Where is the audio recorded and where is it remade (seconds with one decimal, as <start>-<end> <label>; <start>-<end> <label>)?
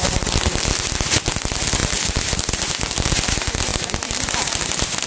0.0-5.1 recorded